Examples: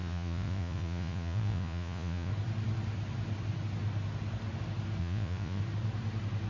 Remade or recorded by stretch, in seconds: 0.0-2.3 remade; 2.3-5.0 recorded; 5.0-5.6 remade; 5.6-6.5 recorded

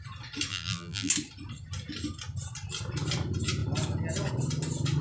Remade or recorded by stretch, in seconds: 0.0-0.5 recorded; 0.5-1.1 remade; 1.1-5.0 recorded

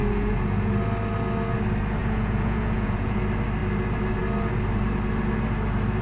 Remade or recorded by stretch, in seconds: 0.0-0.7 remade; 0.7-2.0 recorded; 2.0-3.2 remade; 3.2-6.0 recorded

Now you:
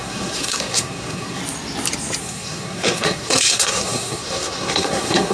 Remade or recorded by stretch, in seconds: 0.0-1.4 remade; 1.4-2.2 recorded; 2.2-5.3 remade